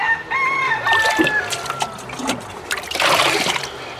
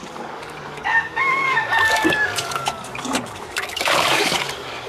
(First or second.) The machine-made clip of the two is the second